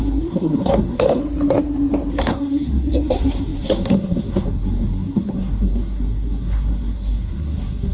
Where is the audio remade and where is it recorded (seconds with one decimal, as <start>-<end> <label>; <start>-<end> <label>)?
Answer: 0.0-1.2 remade; 1.2-2.1 recorded; 2.1-7.9 remade